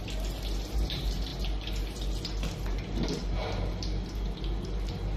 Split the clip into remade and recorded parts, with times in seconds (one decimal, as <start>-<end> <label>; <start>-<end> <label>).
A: 0.0-5.2 remade